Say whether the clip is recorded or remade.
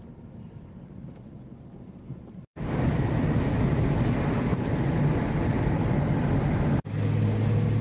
recorded